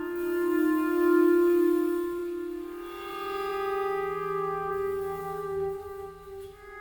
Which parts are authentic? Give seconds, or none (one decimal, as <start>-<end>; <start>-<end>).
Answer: 0.0-5.2